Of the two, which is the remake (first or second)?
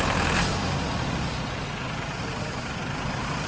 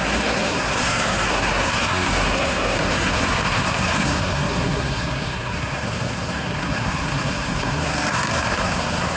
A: second